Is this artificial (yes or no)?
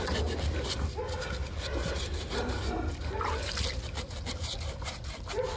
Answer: no